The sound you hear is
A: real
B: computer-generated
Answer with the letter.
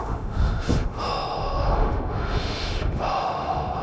B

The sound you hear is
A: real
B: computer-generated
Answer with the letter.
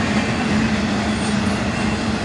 A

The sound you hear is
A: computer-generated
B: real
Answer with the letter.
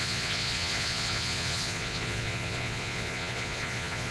A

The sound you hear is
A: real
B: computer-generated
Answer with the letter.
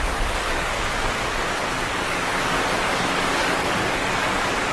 B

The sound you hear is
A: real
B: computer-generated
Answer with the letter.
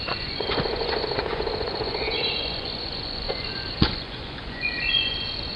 B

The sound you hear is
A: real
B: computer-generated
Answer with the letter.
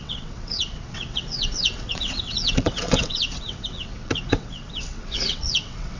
B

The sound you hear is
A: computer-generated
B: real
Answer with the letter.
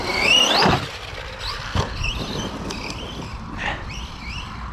B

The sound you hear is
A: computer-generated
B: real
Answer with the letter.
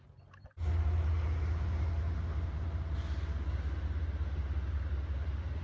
B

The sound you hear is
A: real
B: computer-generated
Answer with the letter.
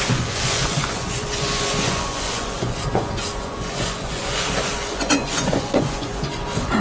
B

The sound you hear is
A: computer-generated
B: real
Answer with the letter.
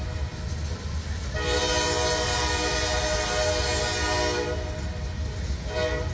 B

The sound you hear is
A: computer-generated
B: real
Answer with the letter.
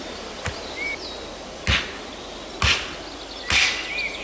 B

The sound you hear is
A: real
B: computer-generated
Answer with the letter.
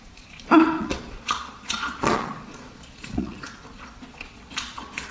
B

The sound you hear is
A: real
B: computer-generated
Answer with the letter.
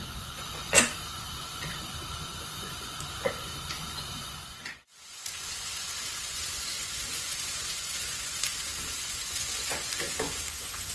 B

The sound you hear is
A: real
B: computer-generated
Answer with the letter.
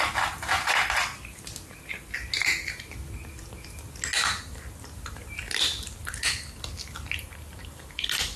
A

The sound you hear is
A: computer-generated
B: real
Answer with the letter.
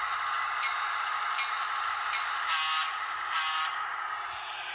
B